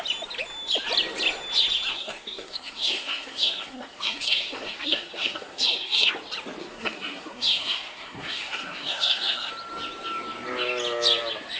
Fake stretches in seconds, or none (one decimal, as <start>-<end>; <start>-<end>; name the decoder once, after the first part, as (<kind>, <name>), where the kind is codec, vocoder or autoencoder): 1.9-6.1 (codec, SNAC); 6.6-9.5

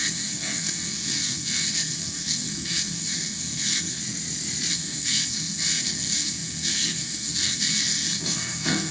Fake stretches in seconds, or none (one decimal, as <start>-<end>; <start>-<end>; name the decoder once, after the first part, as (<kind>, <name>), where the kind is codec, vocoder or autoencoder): 0.0-4.0 (codec, SNAC); 4.7-8.9